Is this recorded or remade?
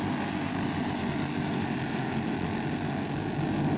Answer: recorded